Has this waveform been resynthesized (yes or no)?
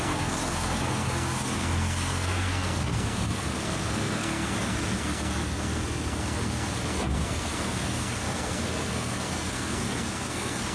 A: yes